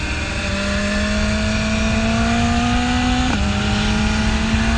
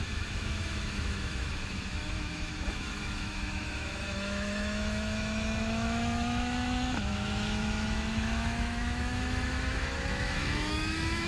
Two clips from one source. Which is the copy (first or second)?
second